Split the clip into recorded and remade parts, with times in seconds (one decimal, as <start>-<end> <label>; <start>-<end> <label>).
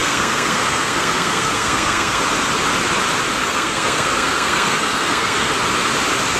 0.0-2.2 remade; 2.2-3.4 recorded; 3.4-5.5 remade; 5.5-6.4 recorded